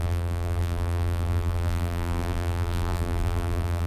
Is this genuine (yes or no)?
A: no